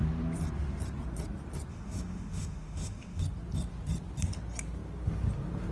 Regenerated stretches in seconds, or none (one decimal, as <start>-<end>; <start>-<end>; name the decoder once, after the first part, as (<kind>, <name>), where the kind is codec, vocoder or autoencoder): 1.7-3.2 (autoencoder, DAC-VAE)